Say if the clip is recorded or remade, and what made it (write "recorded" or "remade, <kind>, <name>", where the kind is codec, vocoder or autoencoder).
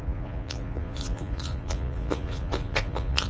remade, vocoder, Vocos